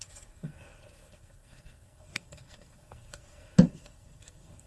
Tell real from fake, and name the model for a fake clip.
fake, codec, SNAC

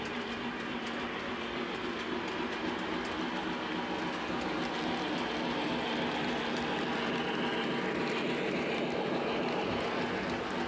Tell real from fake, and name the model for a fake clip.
real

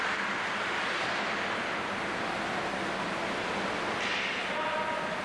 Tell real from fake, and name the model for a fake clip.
real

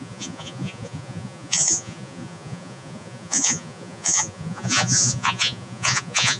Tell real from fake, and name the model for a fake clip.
fake, vocoder, Vocos